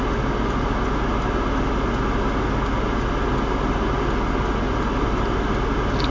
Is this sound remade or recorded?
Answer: recorded